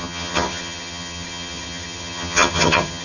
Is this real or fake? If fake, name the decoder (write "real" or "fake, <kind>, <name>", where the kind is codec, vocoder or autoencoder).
fake, vocoder, HiFi-GAN